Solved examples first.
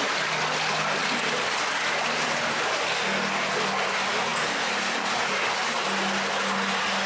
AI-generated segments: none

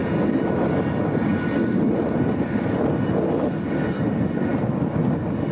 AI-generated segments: none

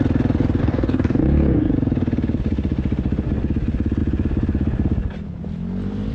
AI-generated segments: 0.6-1.7 (codec, DAC)

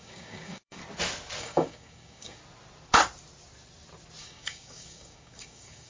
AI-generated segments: 0.0-0.8 (codec, DAC); 1.4-2.4; 4.2-5.9

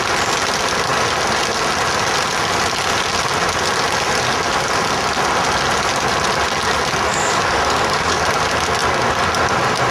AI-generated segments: 7.1-8.2 (codec, DAC)